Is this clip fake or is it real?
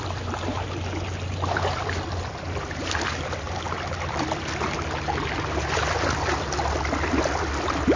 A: real